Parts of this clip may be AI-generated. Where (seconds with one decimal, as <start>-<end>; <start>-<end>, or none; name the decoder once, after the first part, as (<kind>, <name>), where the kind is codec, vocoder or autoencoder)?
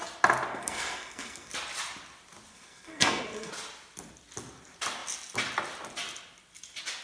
0.5-1.5 (codec, SNAC); 2.5-3.5